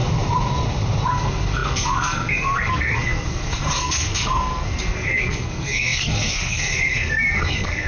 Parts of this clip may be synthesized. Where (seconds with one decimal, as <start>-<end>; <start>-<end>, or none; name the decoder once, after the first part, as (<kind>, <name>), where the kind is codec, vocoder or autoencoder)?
1.1-7.9 (codec, SNAC)